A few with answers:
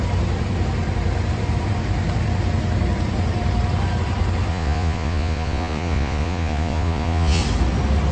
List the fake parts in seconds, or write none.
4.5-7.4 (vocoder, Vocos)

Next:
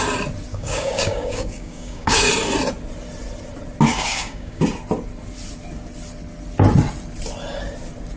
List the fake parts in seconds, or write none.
0.5-2.3 (codec, DAC); 3.9-4.6

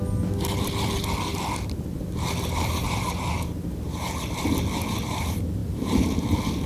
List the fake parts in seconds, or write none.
none